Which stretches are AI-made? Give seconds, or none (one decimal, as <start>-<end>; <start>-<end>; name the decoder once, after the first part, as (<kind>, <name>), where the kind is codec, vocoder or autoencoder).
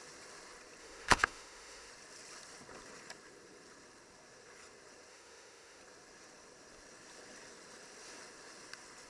0.8-1.9 (autoencoder, DAC-VAE); 5.1-5.8